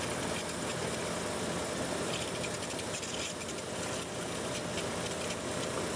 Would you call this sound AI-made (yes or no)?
no